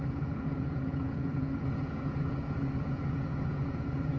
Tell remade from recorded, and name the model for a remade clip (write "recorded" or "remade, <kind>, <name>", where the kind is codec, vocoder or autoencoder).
remade, vocoder, Vocos